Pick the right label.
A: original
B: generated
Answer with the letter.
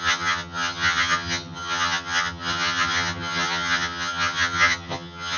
B